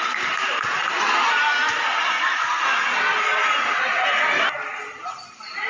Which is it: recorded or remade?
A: recorded